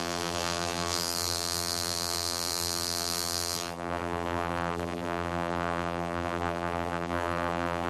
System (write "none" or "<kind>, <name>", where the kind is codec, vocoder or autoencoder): vocoder, BigVGAN v2